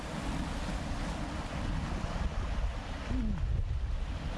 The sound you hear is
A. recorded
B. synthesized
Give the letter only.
A